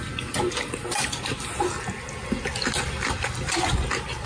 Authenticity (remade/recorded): recorded